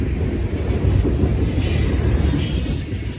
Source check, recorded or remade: recorded